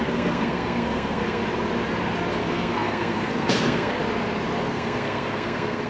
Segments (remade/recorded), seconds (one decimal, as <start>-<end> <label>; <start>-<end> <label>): 0.0-1.4 remade; 1.4-2.4 recorded; 2.4-4.0 remade; 4.0-4.6 recorded; 4.6-5.9 remade